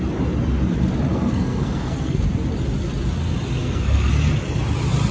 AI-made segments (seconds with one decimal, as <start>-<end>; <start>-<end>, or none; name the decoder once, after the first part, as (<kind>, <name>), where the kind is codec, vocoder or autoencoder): 1.1-2.2 (codec, SNAC); 3.6-4.1